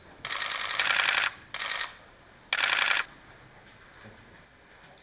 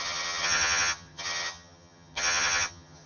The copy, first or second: second